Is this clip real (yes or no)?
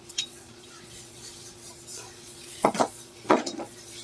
no